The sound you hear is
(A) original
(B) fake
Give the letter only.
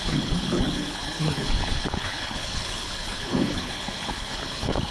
B